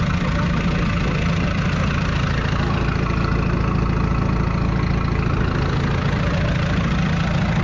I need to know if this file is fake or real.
real